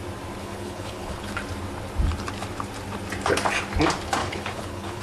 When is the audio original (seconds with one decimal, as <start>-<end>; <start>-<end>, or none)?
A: 0.0-0.4; 1.3-4.2